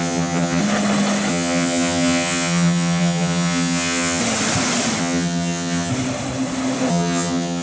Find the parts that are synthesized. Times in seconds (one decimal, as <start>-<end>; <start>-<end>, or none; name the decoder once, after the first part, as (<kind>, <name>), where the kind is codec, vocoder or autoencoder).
0.0-0.6 (vocoder, HiFi-GAN); 1.3-4.2; 5.0-5.9; 6.9-7.6